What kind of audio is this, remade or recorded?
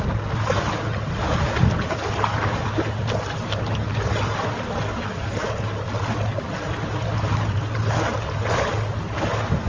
recorded